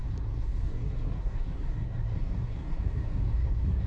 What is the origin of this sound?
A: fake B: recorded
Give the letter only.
A